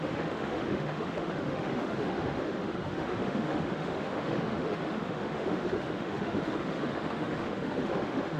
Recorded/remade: remade